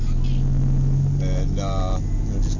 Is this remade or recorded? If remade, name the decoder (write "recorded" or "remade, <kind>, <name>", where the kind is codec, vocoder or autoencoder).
recorded